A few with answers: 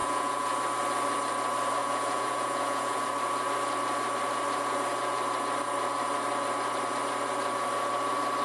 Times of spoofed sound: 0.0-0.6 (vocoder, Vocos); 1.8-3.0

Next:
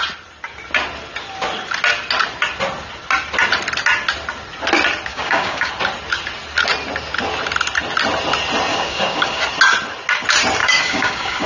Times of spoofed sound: 5.1-5.7 (codec, DAC); 8.7-9.4; 10.6-11.5